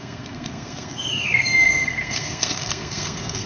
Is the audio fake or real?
fake